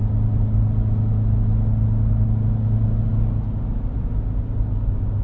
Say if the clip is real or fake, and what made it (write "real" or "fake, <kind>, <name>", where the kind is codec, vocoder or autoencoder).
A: real